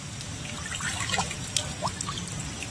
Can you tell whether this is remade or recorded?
recorded